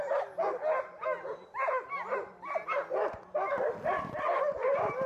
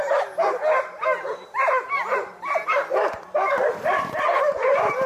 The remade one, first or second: second